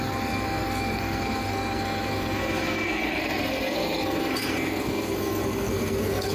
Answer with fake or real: fake